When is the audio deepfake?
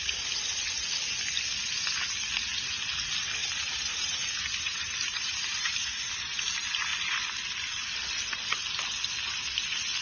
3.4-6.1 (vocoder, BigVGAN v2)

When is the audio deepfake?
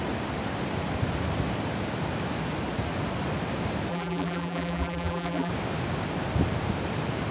3.9-5.5 (vocoder, BigVGAN v2)